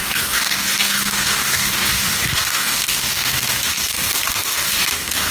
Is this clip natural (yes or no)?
no